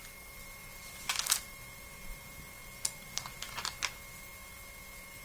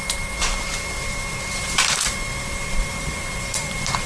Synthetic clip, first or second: second